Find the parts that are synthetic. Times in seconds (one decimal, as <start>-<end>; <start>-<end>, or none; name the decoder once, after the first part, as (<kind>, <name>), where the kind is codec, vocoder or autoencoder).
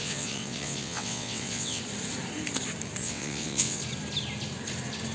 0.0-1.8 (vocoder, WaveNeXt); 3.0-3.8